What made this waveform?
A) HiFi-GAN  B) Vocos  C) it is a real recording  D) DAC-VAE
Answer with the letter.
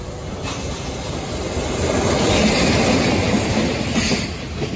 C